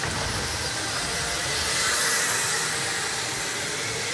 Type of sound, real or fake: real